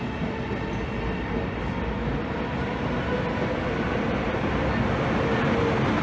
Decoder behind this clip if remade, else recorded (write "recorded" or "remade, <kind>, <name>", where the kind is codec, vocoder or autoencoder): recorded